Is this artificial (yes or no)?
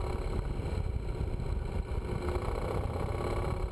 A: no